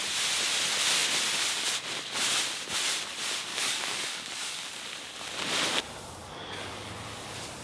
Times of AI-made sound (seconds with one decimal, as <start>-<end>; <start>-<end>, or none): 3.5-4.7; 6.2-6.9